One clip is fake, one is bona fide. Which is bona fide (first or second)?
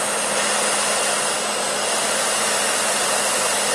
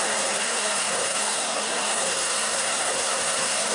first